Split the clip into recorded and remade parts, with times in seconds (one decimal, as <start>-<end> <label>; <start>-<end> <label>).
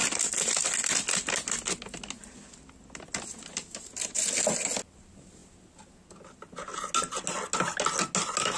0.0-8.6 recorded